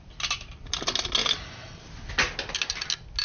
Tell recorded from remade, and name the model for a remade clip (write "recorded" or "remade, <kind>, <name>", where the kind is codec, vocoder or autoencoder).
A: recorded